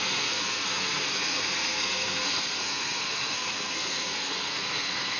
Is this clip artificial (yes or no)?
yes